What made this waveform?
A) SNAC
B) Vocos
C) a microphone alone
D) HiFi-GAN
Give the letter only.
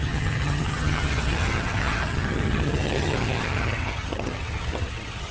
D